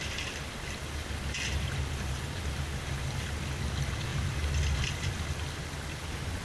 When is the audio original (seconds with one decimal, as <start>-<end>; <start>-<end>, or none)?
0.0-6.4